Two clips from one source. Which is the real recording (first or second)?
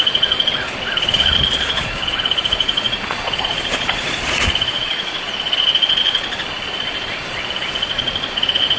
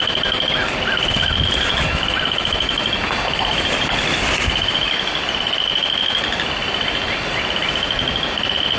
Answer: second